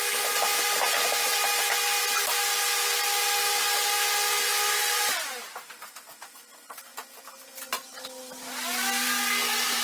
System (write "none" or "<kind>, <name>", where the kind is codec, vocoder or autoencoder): none